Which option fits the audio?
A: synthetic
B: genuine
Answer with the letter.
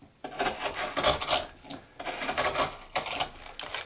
B